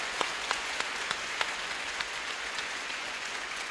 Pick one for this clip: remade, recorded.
remade